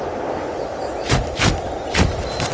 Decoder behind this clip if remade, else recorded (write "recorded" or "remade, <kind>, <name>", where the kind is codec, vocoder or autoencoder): recorded